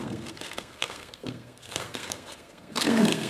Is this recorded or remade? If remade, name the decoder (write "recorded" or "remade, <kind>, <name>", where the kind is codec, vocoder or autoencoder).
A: remade, codec, SNAC